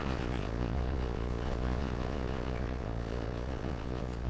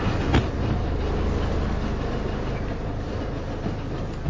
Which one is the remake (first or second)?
first